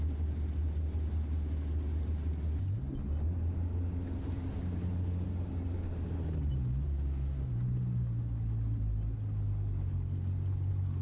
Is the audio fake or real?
real